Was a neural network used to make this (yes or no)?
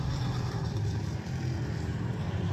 yes